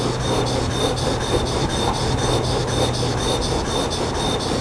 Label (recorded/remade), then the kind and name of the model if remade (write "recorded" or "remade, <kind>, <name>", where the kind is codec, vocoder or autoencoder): recorded